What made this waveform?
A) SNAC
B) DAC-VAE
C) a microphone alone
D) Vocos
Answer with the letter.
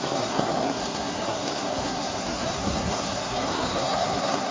A